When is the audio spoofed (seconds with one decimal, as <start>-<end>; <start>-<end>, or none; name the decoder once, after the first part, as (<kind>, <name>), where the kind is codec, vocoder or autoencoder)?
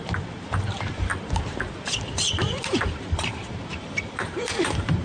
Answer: 0.0-1.1 (vocoder, BigVGAN v2); 2.3-5.0